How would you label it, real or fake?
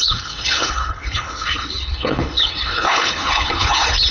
fake